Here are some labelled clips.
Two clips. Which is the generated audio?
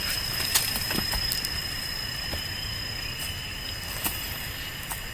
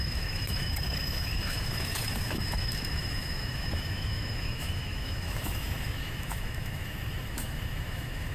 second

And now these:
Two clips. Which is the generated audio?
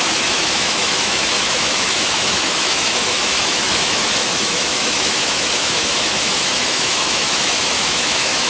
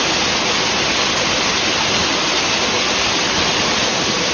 first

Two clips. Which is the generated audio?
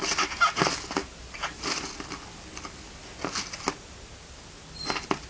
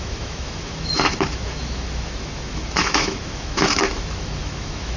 second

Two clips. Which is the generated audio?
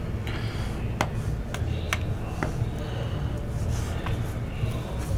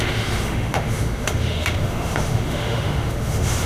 second